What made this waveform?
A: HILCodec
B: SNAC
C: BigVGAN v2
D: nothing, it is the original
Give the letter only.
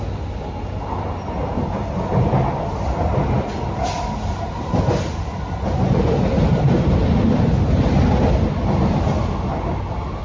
D